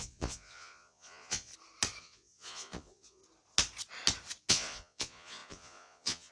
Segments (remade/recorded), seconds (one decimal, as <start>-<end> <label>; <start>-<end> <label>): 0.0-1.5 remade; 1.5-2.0 recorded; 2.0-3.2 remade; 3.2-4.5 recorded; 4.5-6.3 remade